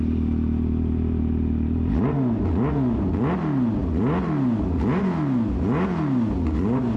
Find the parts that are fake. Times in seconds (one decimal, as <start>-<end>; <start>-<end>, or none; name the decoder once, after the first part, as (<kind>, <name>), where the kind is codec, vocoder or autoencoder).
none